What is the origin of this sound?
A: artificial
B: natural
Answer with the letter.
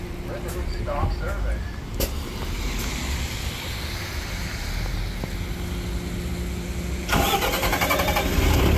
B